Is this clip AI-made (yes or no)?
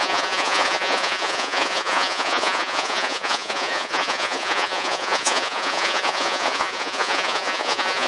yes